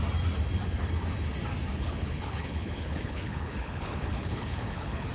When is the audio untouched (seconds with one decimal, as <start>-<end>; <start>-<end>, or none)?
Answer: 0.0-1.7